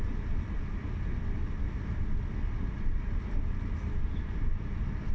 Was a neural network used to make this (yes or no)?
yes